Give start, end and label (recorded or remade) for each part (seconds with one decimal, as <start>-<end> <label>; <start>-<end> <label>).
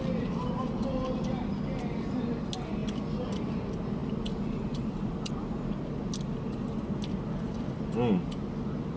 0.0-4.0 recorded; 4.0-5.3 remade; 5.3-9.0 recorded